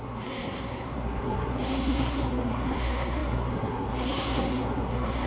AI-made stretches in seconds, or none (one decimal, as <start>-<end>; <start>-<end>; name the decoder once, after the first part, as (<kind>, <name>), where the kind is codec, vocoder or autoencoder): 0.0-5.3 (codec, SNAC)